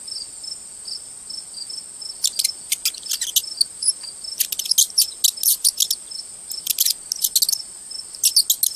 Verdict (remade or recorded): recorded